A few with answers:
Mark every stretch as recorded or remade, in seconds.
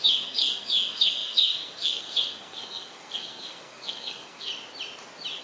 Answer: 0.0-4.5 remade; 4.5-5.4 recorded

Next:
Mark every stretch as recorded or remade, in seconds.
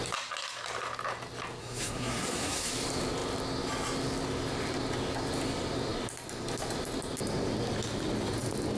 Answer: 0.0-1.6 recorded; 1.6-2.7 remade; 2.7-8.8 recorded